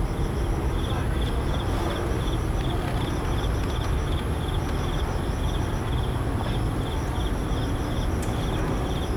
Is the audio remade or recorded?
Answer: recorded